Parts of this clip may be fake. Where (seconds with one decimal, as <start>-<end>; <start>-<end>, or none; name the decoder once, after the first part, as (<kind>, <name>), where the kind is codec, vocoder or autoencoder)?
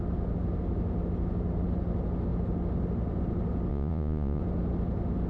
3.7-4.4 (vocoder, Vocos)